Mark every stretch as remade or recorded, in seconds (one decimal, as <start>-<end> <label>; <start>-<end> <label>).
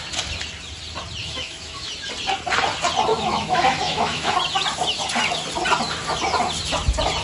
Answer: 0.0-1.2 recorded; 1.2-1.9 remade; 1.9-3.1 recorded; 3.1-4.3 remade; 4.3-7.2 recorded